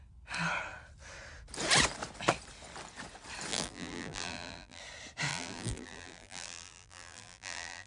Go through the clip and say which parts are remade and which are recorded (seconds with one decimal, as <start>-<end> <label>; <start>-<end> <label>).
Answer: 0.0-3.5 recorded; 3.5-4.8 remade; 4.8-5.3 recorded; 5.3-7.9 remade